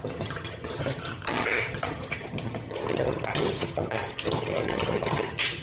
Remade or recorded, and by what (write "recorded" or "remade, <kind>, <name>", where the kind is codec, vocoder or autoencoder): remade, vocoder, HiFi-GAN